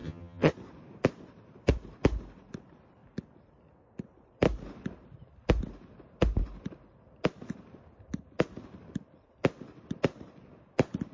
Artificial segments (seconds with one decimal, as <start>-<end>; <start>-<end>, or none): 0.0-0.5